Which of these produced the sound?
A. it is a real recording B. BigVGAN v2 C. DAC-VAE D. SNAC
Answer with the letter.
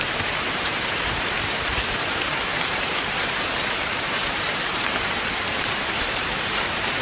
B